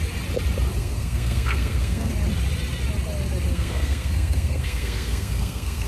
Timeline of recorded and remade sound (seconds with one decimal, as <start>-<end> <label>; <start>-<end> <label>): 0.0-0.8 recorded; 0.8-2.1 remade; 2.1-3.5 recorded; 3.5-5.9 remade